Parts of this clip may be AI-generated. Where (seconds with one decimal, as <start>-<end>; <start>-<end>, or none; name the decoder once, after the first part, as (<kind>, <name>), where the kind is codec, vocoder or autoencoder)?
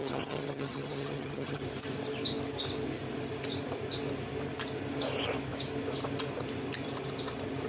0.0-1.6 (vocoder, HiFi-GAN)